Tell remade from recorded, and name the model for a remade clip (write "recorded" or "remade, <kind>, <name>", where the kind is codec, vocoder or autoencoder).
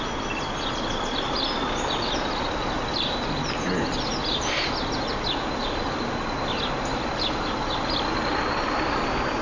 recorded